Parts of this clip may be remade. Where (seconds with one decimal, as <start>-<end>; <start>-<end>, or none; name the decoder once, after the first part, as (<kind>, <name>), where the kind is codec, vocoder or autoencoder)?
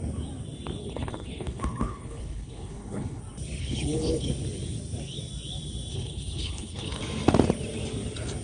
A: 0.8-3.2 (codec, HILCodec); 3.6-4.3; 5.9-7.0